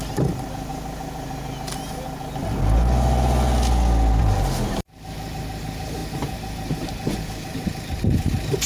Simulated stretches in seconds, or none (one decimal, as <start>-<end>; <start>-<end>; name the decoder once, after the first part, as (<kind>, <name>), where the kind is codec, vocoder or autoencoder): 0.0-0.7 (vocoder, BigVGAN v2); 4.2-8.7